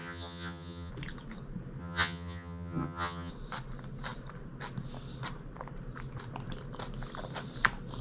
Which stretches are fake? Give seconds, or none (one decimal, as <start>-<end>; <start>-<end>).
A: 0.0-0.9; 1.8-3.3